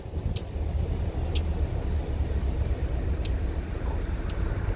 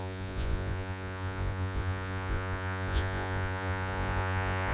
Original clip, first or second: first